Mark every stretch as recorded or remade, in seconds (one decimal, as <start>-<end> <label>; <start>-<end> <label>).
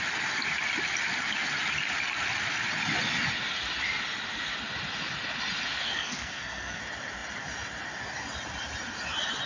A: 0.0-5.8 recorded; 5.8-6.8 remade; 6.8-9.5 recorded